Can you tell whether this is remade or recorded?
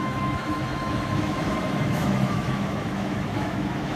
remade